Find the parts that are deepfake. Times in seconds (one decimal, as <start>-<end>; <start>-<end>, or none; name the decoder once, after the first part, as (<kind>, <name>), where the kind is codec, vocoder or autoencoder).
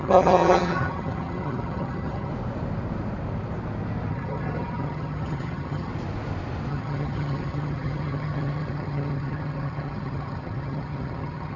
0.0-2.3 (vocoder, HiFi-GAN); 4.1-5.9; 6.7-11.6